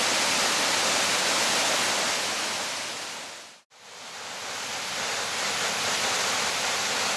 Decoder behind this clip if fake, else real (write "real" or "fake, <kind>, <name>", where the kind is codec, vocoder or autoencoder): real